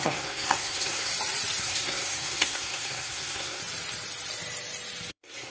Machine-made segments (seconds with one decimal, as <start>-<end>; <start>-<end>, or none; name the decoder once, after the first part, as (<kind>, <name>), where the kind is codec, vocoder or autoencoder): 0.0-1.1 (codec, SNAC); 1.6-3.6; 5.1-5.5